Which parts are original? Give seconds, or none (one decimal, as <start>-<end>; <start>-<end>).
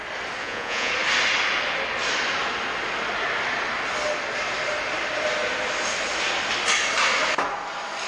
0.0-0.4; 0.9-8.1